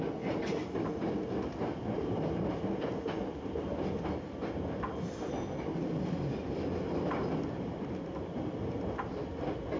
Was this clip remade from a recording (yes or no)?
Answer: no